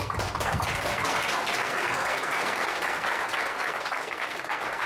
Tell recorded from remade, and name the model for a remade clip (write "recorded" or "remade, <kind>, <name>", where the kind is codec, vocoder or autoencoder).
remade, codec, SNAC